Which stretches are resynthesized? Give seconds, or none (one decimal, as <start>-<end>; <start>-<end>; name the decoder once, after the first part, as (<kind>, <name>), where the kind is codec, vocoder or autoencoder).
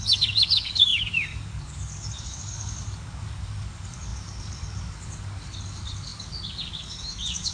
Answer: 0.0-7.5 (codec, DAC)